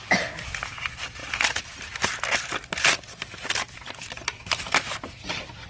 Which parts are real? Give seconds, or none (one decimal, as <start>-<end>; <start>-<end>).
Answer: 0.0-5.7